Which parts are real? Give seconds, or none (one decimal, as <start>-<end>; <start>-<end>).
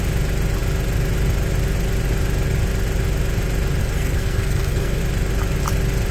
0.0-3.8; 5.0-6.1